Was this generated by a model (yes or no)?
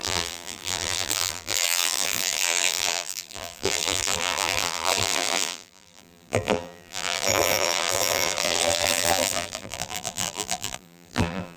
yes